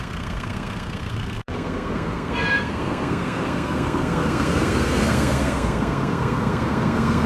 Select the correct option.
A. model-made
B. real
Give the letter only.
A